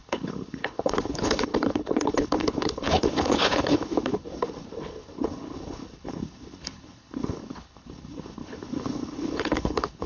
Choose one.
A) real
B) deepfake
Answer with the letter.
B